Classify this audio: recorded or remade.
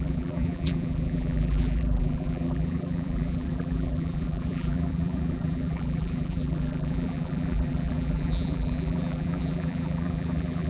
remade